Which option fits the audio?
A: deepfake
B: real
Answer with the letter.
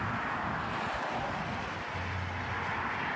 B